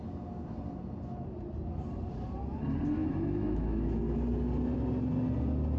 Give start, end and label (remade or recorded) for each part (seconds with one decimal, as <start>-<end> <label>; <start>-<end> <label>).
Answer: 0.0-3.0 recorded; 3.0-4.0 remade; 4.0-5.8 recorded